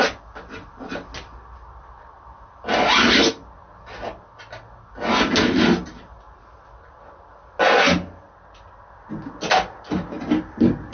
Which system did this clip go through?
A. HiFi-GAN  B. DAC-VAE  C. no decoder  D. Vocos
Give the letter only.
C